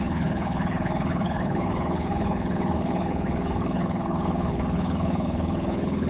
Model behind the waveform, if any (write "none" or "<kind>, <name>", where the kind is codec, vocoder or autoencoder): codec, HILCodec